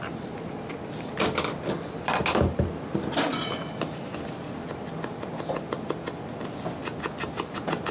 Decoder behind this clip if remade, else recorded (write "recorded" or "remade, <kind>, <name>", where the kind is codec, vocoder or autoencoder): recorded